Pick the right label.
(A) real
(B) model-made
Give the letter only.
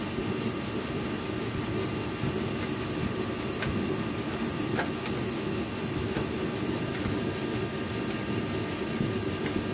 A